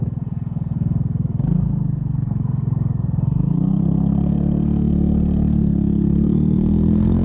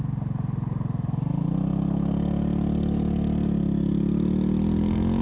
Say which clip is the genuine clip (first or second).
second